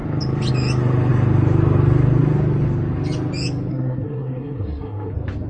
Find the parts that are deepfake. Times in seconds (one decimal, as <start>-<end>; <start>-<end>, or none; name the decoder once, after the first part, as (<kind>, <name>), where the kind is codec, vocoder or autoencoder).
3.7-5.1 (codec, SNAC)